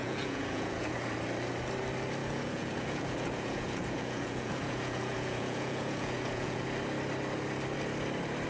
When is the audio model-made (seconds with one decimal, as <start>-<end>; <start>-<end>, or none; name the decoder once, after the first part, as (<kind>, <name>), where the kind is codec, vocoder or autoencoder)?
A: 0.0-0.9 (vocoder, Vocos); 2.2-6.6